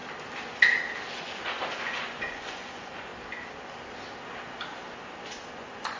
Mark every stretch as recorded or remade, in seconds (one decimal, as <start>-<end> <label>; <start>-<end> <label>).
0.0-1.1 recorded; 1.1-3.1 remade; 3.1-5.5 recorded; 5.5-6.0 remade